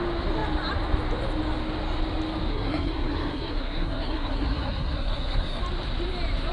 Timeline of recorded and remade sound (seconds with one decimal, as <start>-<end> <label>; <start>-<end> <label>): 0.0-2.5 recorded; 2.5-5.6 remade; 5.6-6.5 recorded